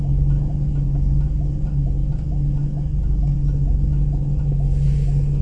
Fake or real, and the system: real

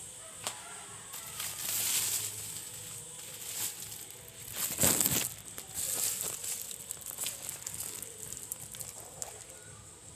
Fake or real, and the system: real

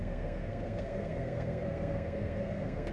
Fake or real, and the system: fake, codec, SNAC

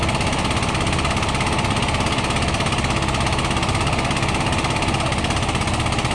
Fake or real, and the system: real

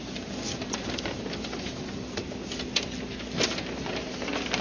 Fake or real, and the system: real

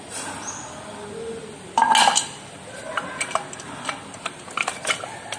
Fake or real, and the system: real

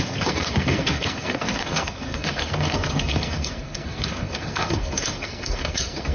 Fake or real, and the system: fake, codec, SNAC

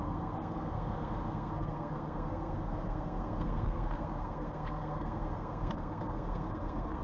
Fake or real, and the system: fake, codec, SNAC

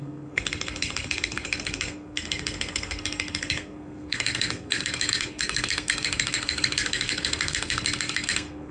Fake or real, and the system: fake, codec, SNAC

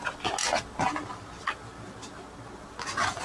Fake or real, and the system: real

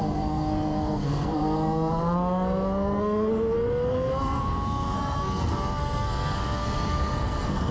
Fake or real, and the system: fake, codec, SNAC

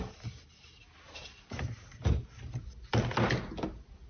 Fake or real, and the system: real